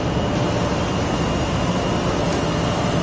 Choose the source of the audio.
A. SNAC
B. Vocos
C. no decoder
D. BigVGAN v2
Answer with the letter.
C